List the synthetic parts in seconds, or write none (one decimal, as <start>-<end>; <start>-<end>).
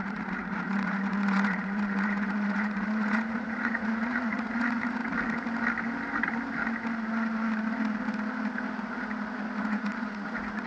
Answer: 0.0-5.0; 9.6-10.7